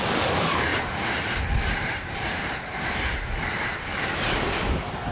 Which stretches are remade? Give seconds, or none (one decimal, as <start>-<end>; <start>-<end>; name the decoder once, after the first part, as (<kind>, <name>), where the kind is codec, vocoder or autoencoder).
none